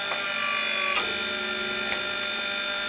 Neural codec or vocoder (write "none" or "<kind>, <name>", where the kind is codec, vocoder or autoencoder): none